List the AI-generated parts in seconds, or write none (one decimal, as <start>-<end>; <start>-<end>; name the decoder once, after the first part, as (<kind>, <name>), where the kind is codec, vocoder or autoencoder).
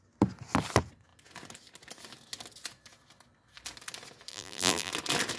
4.3-4.9 (vocoder, BigVGAN v2)